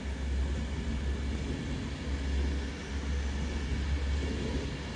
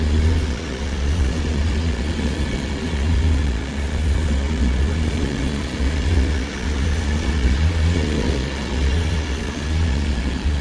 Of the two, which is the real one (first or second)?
first